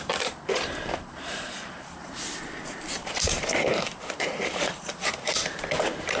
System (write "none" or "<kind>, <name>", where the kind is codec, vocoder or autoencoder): vocoder, BigVGAN v2